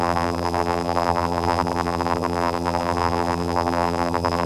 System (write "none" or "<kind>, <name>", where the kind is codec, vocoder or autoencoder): vocoder, BigVGAN v2